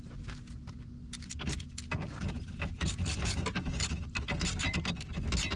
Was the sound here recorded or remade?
recorded